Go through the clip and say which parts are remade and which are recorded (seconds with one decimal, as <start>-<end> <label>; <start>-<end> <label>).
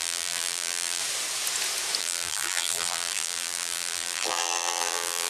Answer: 0.0-1.0 remade; 1.0-2.0 recorded; 2.0-5.3 remade